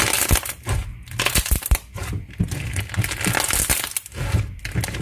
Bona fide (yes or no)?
yes